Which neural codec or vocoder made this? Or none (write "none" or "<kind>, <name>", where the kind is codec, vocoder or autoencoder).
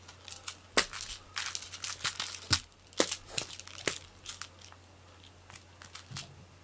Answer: none